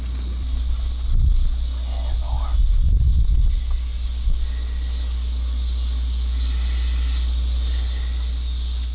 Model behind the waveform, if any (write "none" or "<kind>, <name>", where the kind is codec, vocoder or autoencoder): none